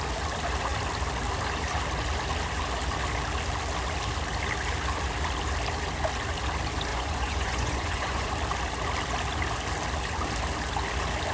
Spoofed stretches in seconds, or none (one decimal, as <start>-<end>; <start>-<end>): 6.9-8.3